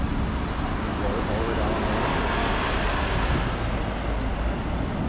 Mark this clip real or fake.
real